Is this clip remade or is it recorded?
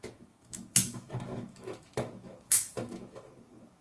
remade